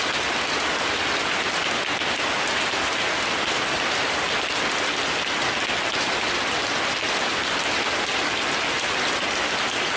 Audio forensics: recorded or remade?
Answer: recorded